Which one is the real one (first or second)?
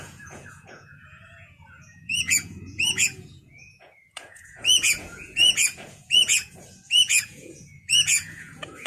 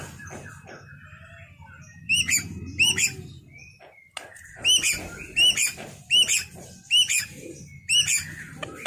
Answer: second